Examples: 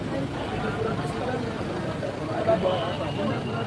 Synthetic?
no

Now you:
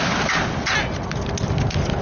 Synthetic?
no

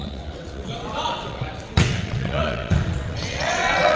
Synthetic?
yes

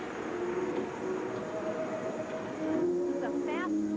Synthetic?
no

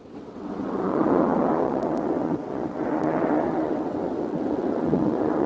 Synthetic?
yes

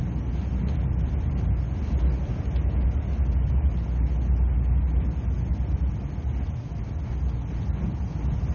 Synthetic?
no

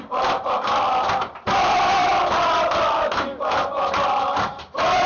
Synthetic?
no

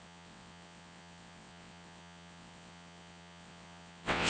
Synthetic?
yes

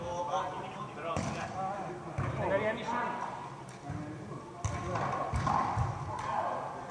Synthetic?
no